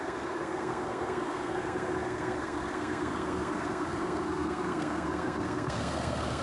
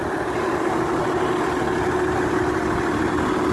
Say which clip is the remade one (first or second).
first